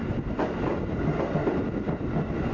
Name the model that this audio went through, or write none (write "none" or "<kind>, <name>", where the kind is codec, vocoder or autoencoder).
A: none